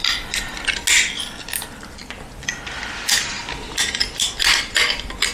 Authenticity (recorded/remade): recorded